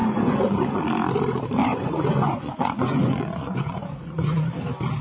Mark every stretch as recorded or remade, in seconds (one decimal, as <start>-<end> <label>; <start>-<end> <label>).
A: 0.0-0.8 remade; 0.8-1.6 recorded; 1.6-4.5 remade; 4.5-5.0 recorded